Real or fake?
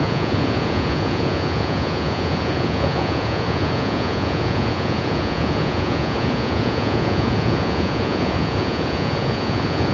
fake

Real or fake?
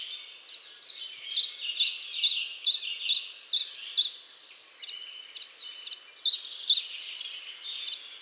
real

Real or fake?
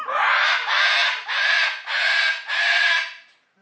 real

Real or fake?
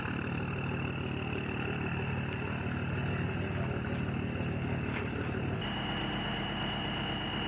real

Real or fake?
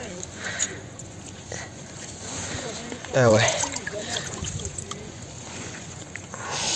fake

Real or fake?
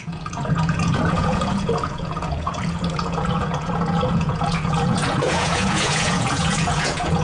fake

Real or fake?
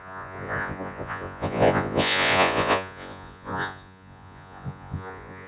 fake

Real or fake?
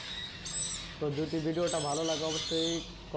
real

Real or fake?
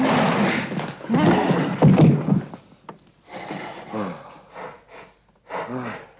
real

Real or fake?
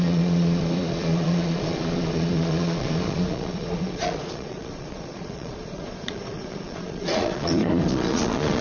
fake